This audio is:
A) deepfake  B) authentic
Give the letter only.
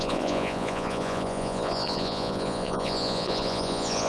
A